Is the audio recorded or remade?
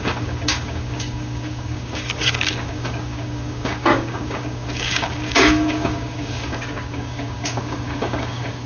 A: remade